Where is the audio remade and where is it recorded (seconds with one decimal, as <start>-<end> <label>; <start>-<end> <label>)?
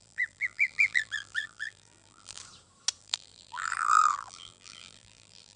0.0-2.4 remade; 2.4-3.0 recorded; 3.0-5.6 remade